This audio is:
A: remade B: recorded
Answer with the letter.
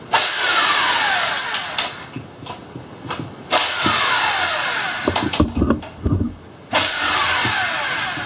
B